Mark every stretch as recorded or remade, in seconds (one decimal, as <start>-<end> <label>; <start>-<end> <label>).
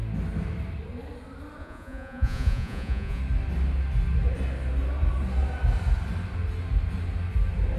0.0-1.6 recorded; 1.6-3.2 remade; 3.2-7.8 recorded